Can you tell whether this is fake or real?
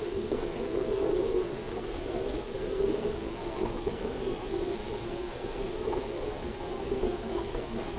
fake